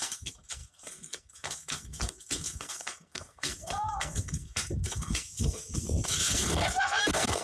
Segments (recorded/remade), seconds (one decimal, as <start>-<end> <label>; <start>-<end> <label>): 0.0-7.4 remade